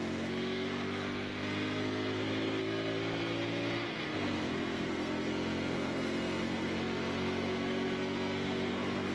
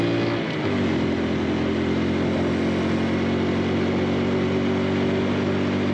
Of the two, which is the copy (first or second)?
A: first